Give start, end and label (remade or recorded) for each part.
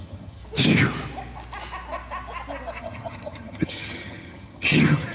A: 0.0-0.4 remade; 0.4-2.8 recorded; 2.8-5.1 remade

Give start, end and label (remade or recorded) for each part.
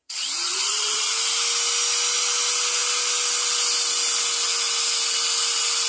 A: 0.0-1.1 remade; 1.1-5.9 recorded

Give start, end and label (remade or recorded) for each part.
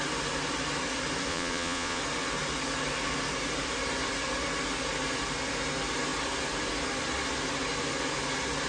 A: 0.0-1.3 recorded; 1.3-2.0 remade; 2.0-8.7 recorded